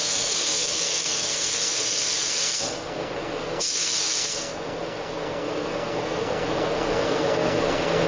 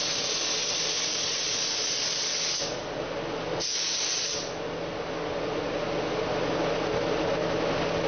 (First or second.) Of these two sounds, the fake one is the first